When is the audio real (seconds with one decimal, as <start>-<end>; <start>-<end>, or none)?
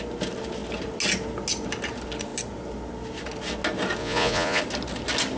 0.0-4.0; 4.6-5.4